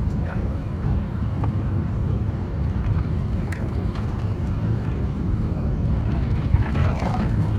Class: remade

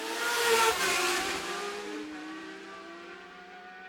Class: remade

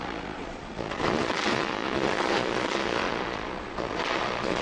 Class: remade